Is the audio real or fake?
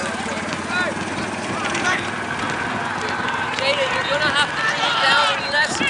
real